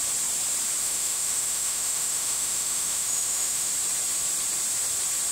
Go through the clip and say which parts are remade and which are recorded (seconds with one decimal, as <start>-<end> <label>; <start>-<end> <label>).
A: 0.0-0.8 recorded; 0.8-3.7 remade; 3.7-5.3 recorded